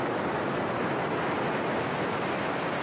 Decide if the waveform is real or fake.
fake